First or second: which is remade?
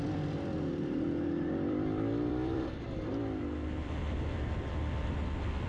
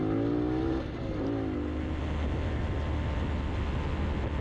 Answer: first